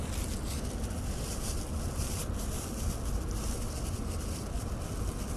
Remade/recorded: remade